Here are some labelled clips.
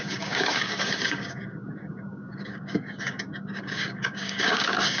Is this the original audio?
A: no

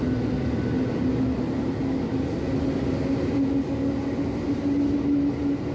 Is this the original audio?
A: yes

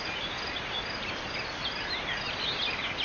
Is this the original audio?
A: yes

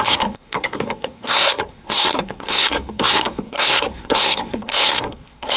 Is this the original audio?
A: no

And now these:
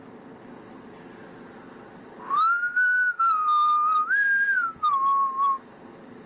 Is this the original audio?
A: yes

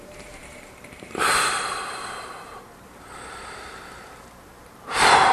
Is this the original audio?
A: no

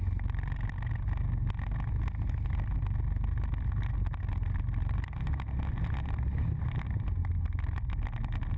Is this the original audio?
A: yes